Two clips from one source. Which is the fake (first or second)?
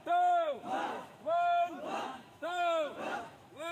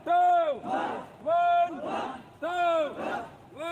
first